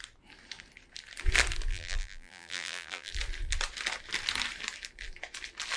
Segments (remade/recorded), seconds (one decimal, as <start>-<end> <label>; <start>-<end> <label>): 0.0-1.7 recorded; 1.7-3.1 remade; 3.1-5.8 recorded

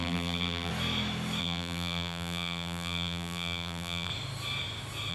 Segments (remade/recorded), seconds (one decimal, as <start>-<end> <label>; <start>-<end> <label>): 0.0-0.7 remade; 0.7-1.4 recorded; 1.4-4.1 remade; 4.1-5.1 recorded

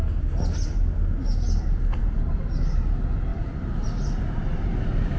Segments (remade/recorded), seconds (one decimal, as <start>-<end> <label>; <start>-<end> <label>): 0.0-2.0 recorded; 2.0-2.6 remade; 2.6-3.3 recorded; 3.3-5.2 remade